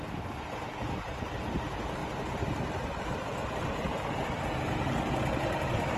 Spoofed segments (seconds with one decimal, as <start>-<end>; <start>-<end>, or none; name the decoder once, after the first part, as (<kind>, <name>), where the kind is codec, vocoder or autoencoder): none